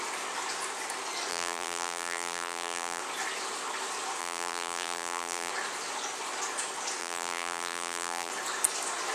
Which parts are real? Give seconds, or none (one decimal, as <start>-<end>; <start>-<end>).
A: 0.0-1.3; 3.0-4.2; 5.5-7.0; 8.3-9.1